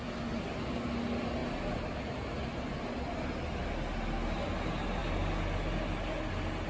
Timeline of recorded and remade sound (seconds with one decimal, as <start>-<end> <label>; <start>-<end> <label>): 0.0-6.7 recorded